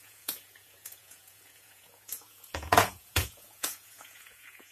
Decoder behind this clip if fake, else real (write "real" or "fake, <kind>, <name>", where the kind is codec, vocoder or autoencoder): fake, vocoder, Vocos